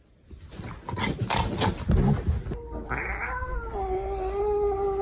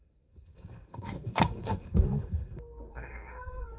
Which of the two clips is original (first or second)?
first